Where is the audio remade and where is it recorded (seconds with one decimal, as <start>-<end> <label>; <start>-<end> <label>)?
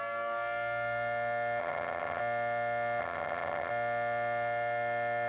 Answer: 0.0-1.6 recorded; 1.6-2.2 remade; 2.2-3.0 recorded; 3.0-3.7 remade; 3.7-5.3 recorded